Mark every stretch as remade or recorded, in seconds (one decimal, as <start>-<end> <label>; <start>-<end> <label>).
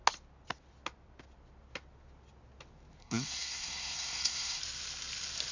0.0-3.0 recorded; 3.0-4.6 remade; 4.6-5.5 recorded